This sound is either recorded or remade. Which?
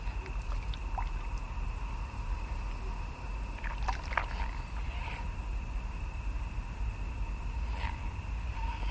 recorded